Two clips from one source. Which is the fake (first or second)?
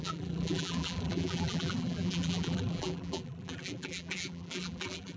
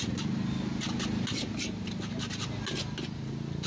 first